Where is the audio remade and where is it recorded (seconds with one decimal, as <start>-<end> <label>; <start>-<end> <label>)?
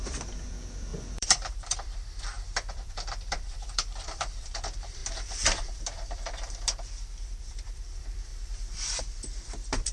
0.0-5.0 remade; 5.0-7.4 recorded; 7.4-9.9 remade